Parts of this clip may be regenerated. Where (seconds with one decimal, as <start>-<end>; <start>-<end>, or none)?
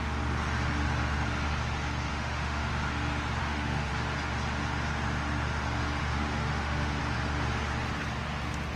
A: 2.1-2.7; 3.4-3.9; 6.0-7.0